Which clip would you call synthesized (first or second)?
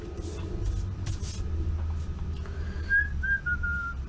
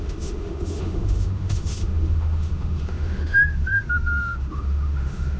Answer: second